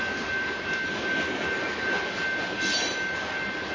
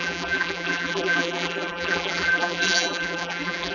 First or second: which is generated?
second